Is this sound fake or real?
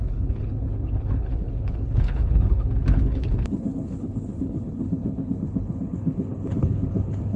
fake